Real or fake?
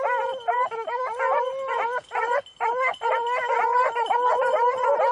real